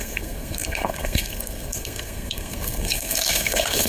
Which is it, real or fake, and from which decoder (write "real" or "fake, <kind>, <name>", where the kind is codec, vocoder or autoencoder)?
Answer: fake, codec, SNAC